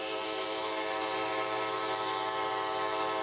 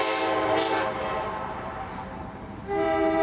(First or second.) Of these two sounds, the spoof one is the second